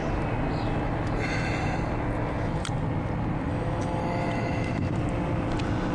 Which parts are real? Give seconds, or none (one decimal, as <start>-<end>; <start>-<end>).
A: 0.0-3.5; 4.0-5.9